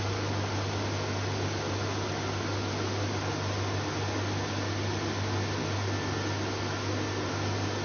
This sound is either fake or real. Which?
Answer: real